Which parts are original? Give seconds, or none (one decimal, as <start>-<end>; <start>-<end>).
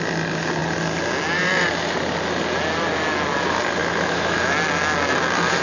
0.0-3.8; 4.4-5.6